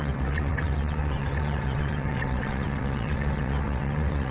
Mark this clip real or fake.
fake